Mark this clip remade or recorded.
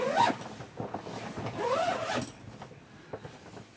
recorded